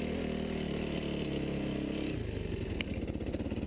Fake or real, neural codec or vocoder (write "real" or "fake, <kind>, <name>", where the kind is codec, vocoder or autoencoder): real